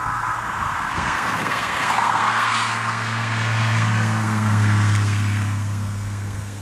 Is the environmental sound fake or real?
fake